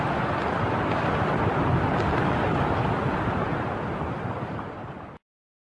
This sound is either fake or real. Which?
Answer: real